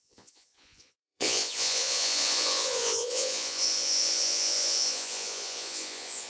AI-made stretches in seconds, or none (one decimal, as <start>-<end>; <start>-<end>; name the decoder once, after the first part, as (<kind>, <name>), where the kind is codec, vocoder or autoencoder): 0.0-6.3 (vocoder, Vocos)